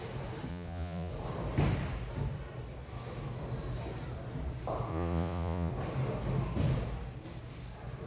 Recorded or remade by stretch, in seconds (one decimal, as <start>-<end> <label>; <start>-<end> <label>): 0.0-0.5 recorded; 0.5-1.1 remade; 1.1-4.9 recorded; 4.9-5.7 remade; 5.7-8.1 recorded